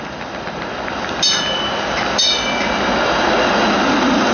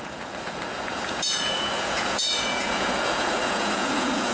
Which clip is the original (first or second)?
first